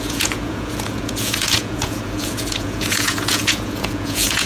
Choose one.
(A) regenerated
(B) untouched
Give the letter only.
A